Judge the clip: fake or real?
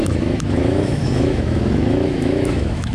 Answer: fake